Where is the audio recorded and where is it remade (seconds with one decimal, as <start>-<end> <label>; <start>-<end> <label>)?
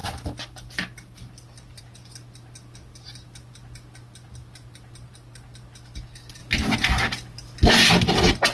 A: 0.0-8.5 recorded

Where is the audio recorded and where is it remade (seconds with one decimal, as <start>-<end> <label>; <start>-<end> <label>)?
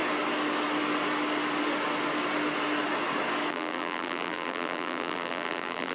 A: 0.0-3.5 recorded; 3.5-5.9 remade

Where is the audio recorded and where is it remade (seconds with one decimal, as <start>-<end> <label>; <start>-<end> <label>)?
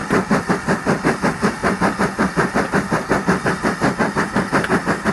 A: 0.0-5.1 recorded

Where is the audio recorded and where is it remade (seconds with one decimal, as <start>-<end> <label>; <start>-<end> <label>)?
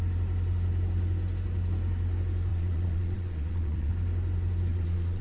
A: 0.0-2.5 recorded; 2.5-3.9 remade; 3.9-4.7 recorded; 4.7-5.2 remade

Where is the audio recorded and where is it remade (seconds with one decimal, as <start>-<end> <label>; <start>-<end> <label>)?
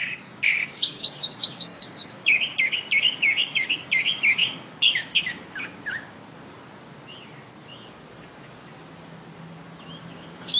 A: 0.0-6.2 remade; 6.2-10.0 recorded; 10.0-10.6 remade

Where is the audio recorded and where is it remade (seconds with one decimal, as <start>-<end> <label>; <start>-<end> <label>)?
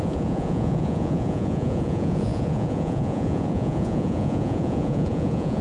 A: 0.0-5.6 remade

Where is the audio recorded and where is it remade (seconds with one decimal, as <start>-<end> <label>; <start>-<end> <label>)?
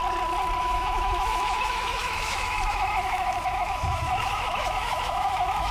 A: 0.0-0.6 recorded; 0.6-5.7 remade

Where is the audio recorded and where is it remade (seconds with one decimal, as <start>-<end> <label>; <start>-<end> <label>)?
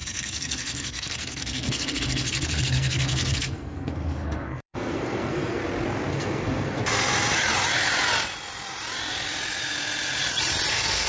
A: 0.0-5.6 remade; 5.6-6.1 recorded; 6.1-6.8 remade; 6.8-10.7 recorded; 10.7-11.1 remade